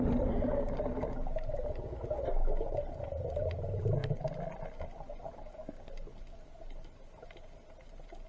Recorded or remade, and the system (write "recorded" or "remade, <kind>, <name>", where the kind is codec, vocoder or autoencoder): recorded